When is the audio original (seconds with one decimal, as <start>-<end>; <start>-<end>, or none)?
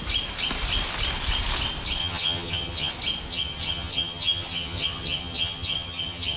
0.0-2.0; 2.9-3.3